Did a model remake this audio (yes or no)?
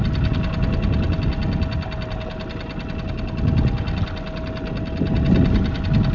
no